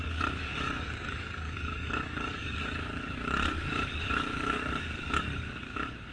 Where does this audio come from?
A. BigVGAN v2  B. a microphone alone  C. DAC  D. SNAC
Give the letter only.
C